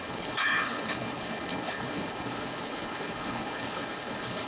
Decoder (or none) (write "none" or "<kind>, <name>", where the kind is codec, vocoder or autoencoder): codec, HILCodec